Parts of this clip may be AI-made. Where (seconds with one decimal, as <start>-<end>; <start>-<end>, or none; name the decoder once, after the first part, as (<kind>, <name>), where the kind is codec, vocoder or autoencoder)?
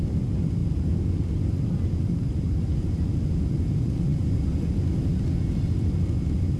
none